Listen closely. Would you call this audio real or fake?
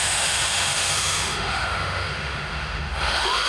fake